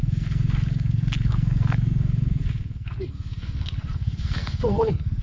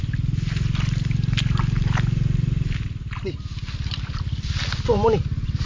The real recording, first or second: second